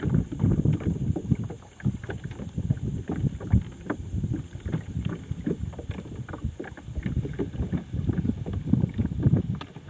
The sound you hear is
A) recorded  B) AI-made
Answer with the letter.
A